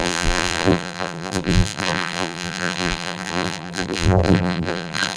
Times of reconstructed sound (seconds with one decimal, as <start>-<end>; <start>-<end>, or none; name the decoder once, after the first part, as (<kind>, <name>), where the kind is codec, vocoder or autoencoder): 0.0-5.2 (vocoder, BigVGAN v2)